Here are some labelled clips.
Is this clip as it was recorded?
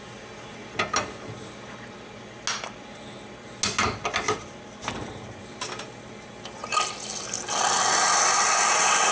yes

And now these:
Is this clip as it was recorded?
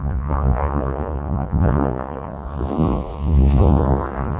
no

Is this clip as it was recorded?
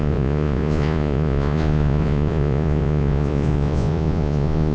no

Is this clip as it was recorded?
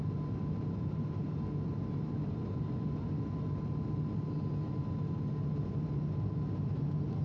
yes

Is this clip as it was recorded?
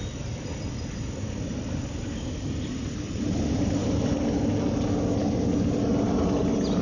yes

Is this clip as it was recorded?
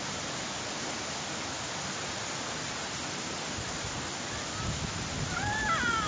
yes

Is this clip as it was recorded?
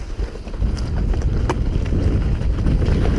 yes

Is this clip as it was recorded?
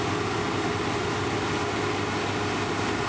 yes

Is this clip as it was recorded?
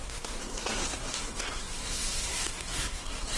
no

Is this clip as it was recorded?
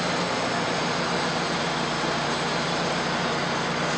yes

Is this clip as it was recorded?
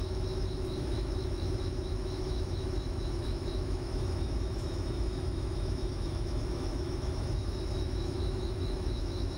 no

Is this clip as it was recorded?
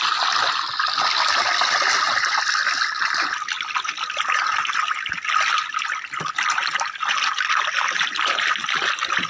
yes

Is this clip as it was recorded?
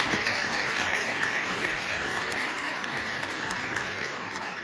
no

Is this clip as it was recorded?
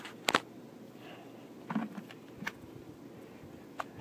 yes